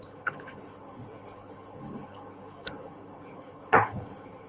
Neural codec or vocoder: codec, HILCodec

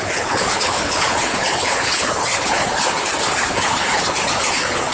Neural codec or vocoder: codec, HILCodec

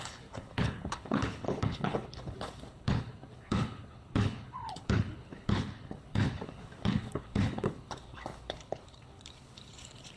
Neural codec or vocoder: codec, HILCodec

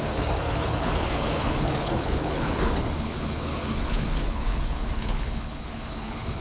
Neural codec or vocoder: codec, HILCodec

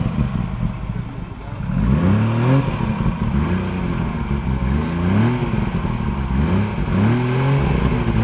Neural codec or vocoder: none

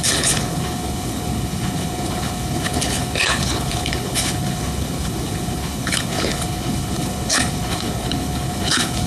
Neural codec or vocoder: codec, HILCodec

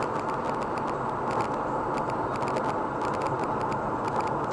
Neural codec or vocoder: none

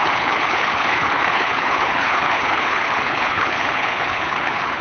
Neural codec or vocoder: codec, HILCodec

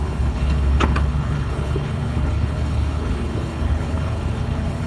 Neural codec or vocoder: codec, HILCodec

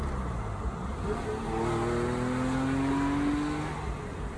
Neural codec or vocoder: none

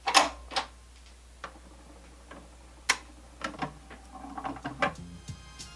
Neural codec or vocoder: none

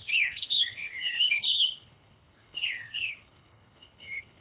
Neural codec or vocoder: codec, HILCodec